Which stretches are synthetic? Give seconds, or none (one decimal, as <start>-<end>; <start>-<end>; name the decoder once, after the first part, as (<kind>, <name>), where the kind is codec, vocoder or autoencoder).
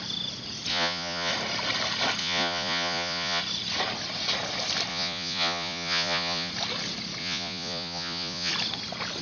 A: 0.7-1.3 (vocoder, Vocos); 2.2-3.4; 4.9-6.5; 7.2-8.5